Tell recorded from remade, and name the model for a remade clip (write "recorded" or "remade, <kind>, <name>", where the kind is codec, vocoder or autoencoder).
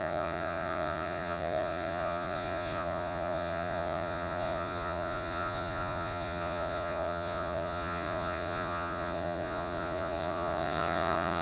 remade, vocoder, Vocos